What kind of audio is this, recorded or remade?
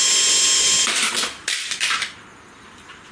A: recorded